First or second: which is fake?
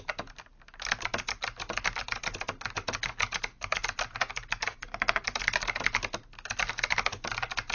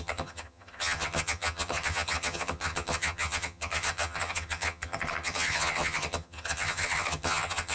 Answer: second